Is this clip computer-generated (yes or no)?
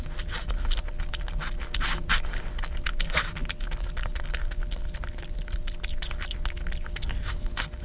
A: no